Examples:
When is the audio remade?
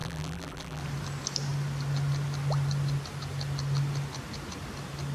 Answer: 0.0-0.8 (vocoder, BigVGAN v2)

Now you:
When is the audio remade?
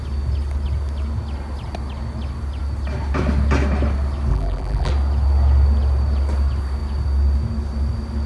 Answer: 4.3-4.9 (vocoder, BigVGAN v2)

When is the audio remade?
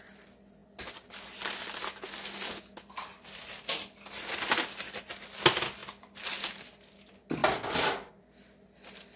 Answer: none